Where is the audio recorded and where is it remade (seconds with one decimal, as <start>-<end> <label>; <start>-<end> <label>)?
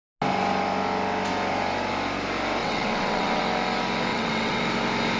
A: 0.0-2.6 recorded; 2.6-3.4 remade; 3.4-4.1 recorded; 4.1-4.6 remade; 4.6-5.2 recorded